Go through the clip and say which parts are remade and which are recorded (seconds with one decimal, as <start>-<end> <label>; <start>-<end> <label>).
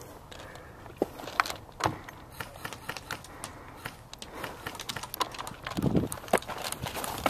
0.0-7.3 recorded